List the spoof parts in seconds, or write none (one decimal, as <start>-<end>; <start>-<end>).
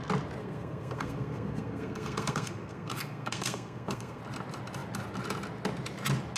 0.4-4.2